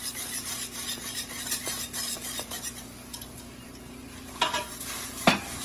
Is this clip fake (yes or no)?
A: yes